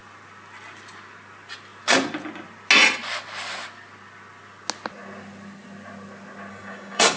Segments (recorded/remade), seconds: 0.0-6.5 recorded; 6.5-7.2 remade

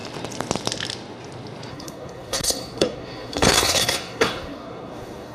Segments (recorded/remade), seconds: 0.0-1.7 recorded; 1.7-5.3 remade

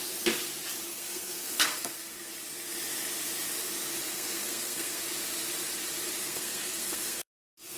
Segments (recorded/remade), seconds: 0.0-0.9 recorded; 0.9-2.3 remade; 2.3-4.1 recorded; 4.1-5.0 remade; 5.0-6.2 recorded; 6.2-7.8 remade

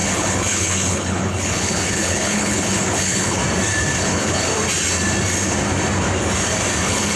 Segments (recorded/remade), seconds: 0.0-3.4 remade; 3.4-4.0 recorded; 4.0-4.5 remade; 4.5-6.8 recorded; 6.8-7.2 remade

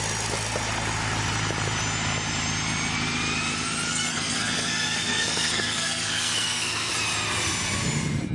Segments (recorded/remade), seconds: 0.0-3.9 recorded; 3.9-6.9 remade; 6.9-8.3 recorded

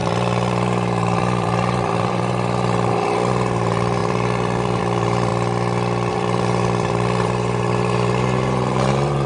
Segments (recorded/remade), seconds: 0.0-5.3 remade; 5.3-6.1 recorded; 6.1-9.3 remade